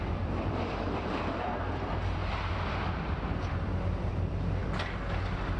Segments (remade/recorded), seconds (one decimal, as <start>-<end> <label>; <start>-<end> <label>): 0.0-4.6 remade; 4.6-5.6 recorded